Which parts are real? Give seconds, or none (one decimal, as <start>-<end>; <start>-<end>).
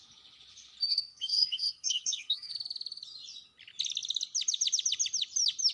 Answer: 0.0-0.9; 2.5-5.7